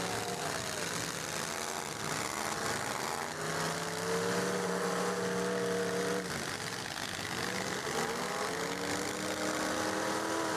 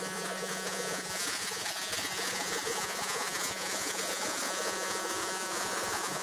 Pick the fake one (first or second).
second